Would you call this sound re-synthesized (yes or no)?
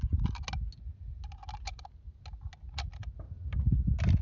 no